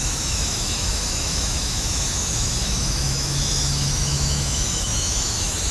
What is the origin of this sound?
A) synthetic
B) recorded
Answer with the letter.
A